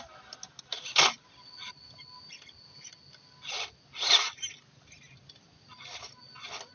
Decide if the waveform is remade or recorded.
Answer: recorded